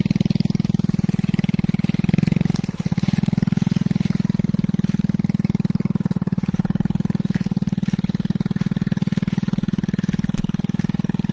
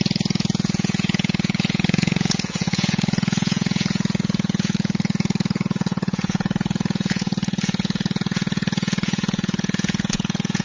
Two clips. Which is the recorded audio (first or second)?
first